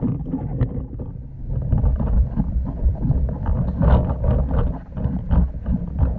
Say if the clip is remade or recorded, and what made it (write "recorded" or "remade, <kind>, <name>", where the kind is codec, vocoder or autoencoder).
recorded